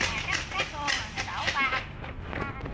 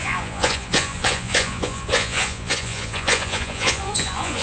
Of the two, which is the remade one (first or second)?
second